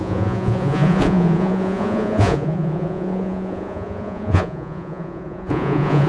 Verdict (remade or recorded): remade